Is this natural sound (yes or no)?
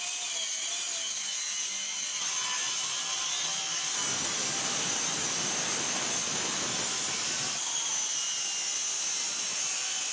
yes